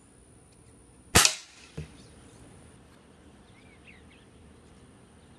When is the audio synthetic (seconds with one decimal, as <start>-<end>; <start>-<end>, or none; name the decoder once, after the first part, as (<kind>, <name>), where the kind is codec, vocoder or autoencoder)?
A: none